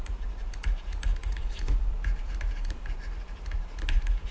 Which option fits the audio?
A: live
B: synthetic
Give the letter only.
B